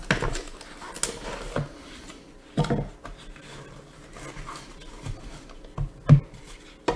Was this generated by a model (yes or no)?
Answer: no